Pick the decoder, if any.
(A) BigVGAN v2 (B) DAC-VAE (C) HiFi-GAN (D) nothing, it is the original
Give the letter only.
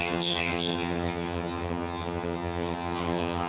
C